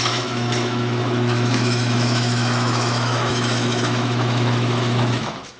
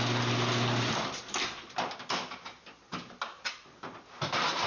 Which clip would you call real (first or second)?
second